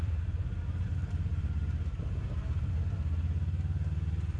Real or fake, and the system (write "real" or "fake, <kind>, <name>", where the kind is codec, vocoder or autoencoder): real